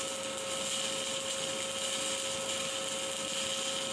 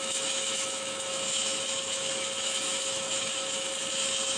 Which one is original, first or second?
first